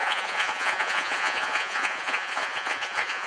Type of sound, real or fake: fake